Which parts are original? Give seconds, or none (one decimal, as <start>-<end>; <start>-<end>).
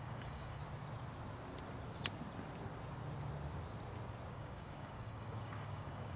0.6-4.3